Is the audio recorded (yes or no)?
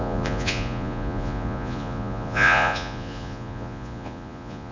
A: no